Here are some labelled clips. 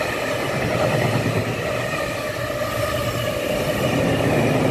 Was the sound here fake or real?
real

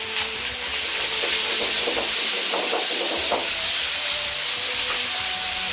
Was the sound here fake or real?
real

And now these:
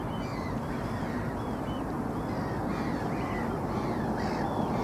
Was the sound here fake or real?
real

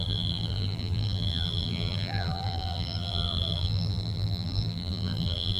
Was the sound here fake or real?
fake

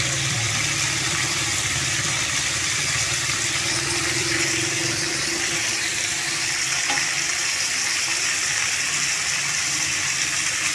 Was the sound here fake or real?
fake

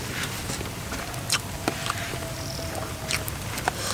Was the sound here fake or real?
real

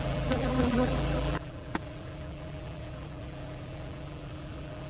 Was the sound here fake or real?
fake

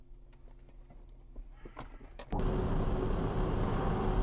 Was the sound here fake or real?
real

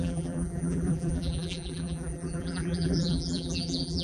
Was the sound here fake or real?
fake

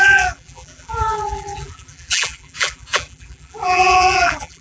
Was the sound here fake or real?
fake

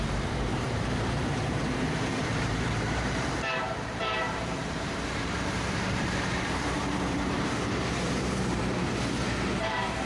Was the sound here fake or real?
fake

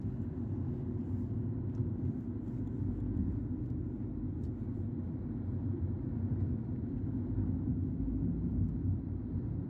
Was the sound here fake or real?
real